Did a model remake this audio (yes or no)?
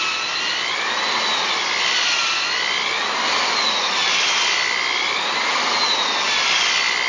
no